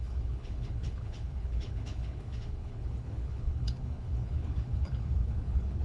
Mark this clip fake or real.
fake